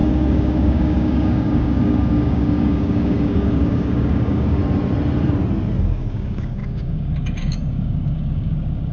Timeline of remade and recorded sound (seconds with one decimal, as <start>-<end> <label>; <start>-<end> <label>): 0.0-4.6 remade; 4.6-5.8 recorded; 5.8-8.9 remade